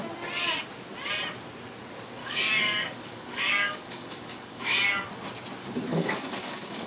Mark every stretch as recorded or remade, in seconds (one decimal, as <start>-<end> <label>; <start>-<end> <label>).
0.0-2.2 recorded; 2.2-5.2 remade; 5.2-5.9 recorded; 5.9-6.9 remade